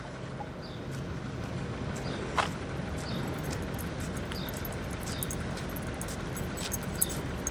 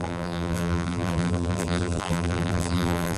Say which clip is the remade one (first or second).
second